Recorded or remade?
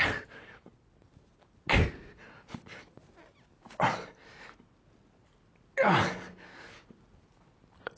recorded